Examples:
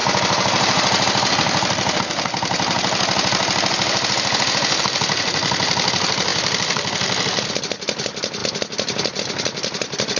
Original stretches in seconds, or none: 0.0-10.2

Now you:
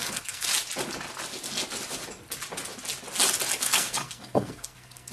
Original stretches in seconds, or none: 0.5-3.6

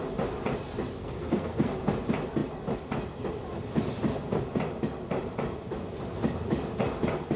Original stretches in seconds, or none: 0.0-1.0; 1.9-7.4

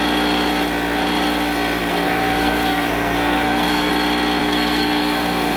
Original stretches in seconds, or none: 0.0-1.8; 3.9-4.4

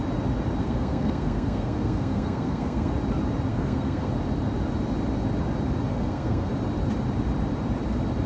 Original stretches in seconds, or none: 0.0-0.6; 2.9-3.5; 4.1-5.9; 6.5-8.3

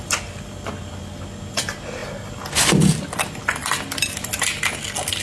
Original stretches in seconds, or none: 0.0-5.2